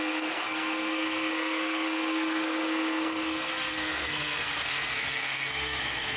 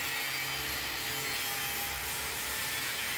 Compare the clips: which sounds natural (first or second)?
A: second